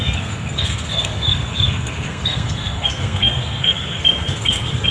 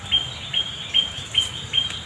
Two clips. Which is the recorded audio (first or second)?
second